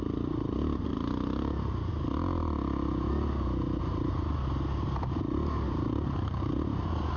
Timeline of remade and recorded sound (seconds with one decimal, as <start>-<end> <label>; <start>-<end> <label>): 0.0-7.2 recorded